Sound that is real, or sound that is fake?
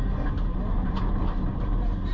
real